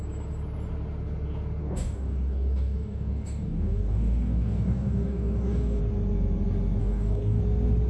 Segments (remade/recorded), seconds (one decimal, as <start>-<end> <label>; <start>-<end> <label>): 0.0-1.6 recorded; 1.6-5.8 remade; 5.8-6.8 recorded; 6.8-7.4 remade; 7.4-7.9 recorded